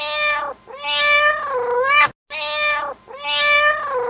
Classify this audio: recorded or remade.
recorded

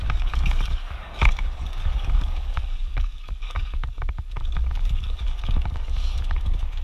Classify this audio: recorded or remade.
remade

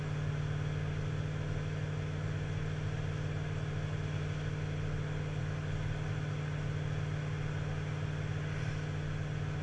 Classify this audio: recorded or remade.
recorded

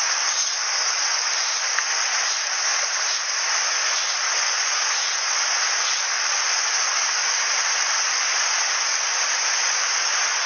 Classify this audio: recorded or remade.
recorded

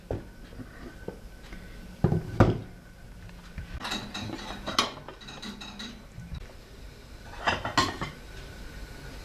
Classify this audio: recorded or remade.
recorded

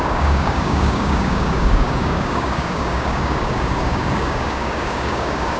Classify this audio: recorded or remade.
remade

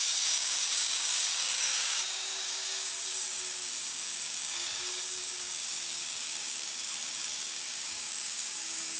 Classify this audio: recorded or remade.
remade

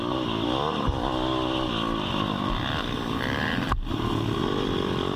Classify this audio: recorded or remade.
recorded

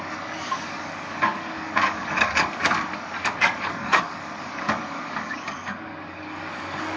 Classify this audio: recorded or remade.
remade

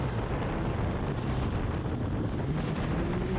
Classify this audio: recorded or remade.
recorded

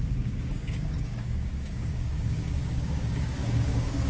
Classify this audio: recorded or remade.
remade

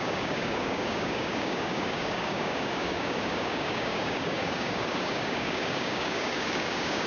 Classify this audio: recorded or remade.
remade